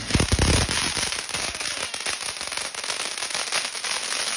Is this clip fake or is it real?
real